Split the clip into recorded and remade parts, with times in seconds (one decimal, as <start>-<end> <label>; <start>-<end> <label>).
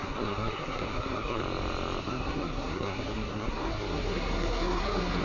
0.0-1.4 remade; 1.4-2.0 recorded; 2.0-5.2 remade